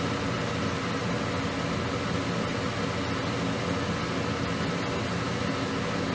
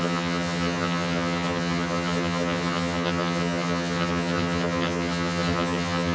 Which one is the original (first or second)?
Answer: first